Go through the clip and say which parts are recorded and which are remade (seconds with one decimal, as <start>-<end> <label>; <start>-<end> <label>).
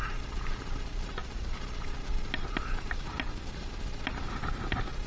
0.0-5.1 recorded